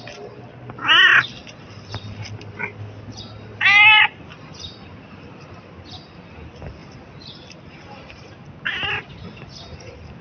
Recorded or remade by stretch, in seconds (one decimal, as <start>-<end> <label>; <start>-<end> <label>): 0.0-10.2 recorded